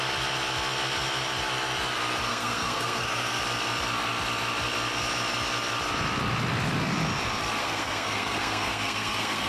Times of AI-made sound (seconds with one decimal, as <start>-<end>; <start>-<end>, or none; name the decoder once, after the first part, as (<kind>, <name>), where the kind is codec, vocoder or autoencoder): 2.3-3.4 (codec, SNAC); 7.6-9.5